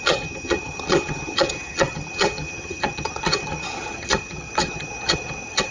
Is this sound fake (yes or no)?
yes